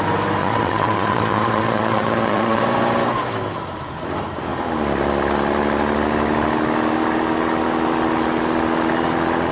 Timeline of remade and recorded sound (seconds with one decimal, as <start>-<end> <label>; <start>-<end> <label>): 0.0-0.4 recorded; 0.4-2.6 remade; 2.6-9.5 recorded

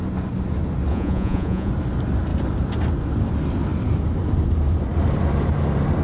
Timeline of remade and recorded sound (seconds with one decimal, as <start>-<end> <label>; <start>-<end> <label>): 0.0-0.9 recorded; 0.9-1.7 remade; 1.7-6.0 recorded

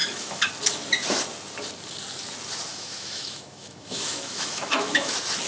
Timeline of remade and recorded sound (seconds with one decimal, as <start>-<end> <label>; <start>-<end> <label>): 0.0-0.5 remade; 0.5-2.7 recorded; 2.7-5.1 remade; 5.1-5.5 recorded

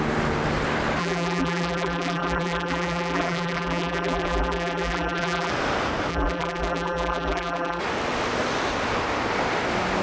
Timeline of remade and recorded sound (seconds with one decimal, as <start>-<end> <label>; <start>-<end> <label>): 0.0-1.0 recorded; 1.0-5.5 remade; 5.5-6.1 recorded; 6.1-7.8 remade; 7.8-10.0 recorded

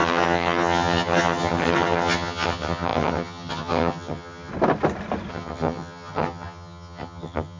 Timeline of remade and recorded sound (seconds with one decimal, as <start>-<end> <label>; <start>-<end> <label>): 0.0-4.5 remade; 4.5-5.3 recorded; 5.3-7.6 remade

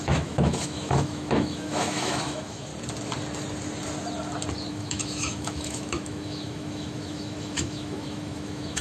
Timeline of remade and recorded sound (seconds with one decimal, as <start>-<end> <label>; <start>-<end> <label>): 0.0-2.7 remade; 2.7-4.7 recorded; 4.7-8.8 remade

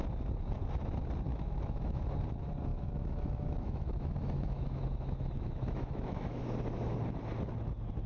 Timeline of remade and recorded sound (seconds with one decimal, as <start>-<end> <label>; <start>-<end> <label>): 0.0-1.3 recorded; 1.3-2.0 remade; 2.0-2.7 recorded; 2.7-6.4 remade; 6.4-8.1 recorded